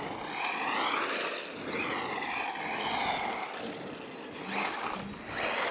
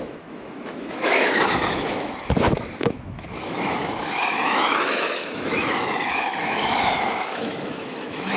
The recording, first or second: first